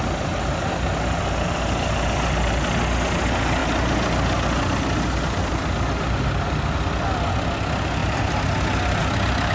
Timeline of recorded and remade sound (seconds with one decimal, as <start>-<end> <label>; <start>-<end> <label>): 0.0-9.5 recorded